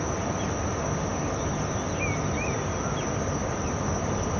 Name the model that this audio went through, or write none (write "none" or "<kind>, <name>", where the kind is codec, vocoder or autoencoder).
none